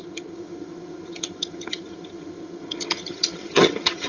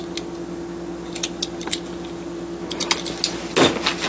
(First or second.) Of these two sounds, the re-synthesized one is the first